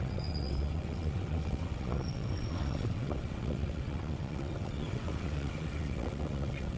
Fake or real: fake